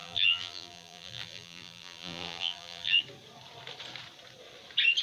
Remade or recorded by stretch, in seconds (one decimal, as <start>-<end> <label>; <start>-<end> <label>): 0.0-3.0 remade; 3.0-5.0 recorded